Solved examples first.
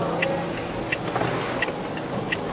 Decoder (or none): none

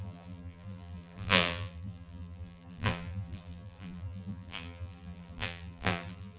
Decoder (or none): vocoder, BigVGAN v2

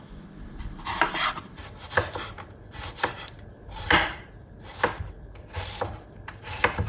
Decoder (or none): vocoder, BigVGAN v2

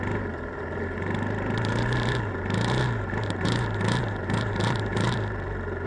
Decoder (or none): vocoder, BigVGAN v2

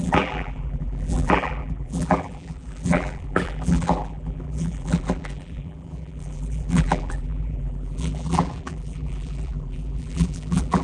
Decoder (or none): vocoder, BigVGAN v2